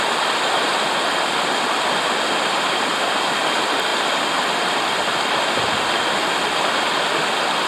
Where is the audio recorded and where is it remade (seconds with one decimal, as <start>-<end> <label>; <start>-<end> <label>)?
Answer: 0.0-7.7 recorded